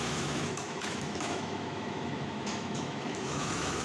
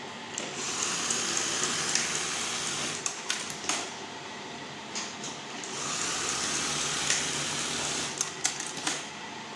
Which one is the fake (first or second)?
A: first